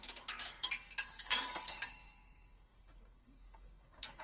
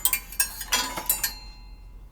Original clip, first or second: second